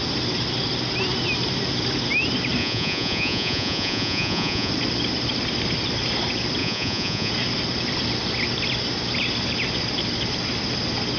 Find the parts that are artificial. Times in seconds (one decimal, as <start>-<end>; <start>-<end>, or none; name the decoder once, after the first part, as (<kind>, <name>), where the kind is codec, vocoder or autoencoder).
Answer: 2.6-4.7 (vocoder, Vocos); 6.6-7.3